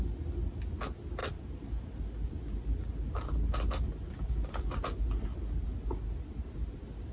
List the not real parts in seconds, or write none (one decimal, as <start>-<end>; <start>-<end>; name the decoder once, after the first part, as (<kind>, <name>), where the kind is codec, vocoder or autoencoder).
none